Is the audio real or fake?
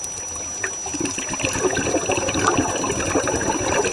real